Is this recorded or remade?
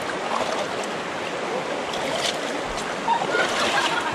recorded